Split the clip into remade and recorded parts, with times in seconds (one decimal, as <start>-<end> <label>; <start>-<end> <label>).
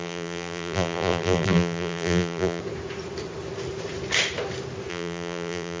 0.0-2.6 remade; 2.6-4.9 recorded; 4.9-5.8 remade